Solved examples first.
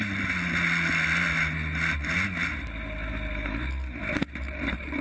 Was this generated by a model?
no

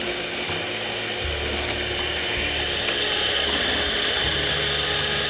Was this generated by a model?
no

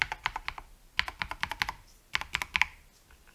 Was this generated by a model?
no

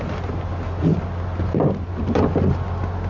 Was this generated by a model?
no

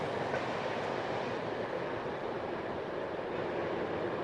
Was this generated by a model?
no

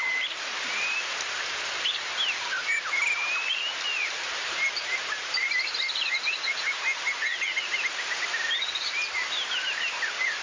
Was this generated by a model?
yes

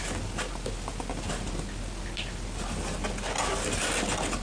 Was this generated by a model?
no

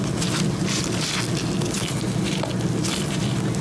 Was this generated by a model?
yes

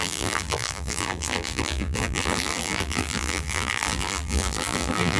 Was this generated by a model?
yes